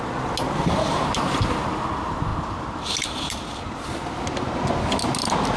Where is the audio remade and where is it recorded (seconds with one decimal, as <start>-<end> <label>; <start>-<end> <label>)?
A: 0.0-5.6 recorded